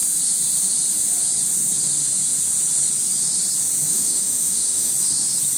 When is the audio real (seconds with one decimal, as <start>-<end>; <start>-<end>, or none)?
0.0-3.9; 4.9-5.6